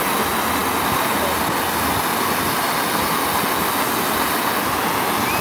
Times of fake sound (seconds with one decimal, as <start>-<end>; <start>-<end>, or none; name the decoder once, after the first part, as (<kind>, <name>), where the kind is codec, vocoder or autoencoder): none